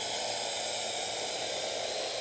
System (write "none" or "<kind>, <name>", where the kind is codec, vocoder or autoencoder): none